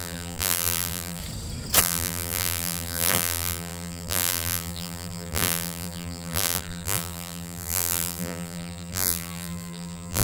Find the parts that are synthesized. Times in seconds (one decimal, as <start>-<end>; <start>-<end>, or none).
0.0-1.2; 1.8-10.2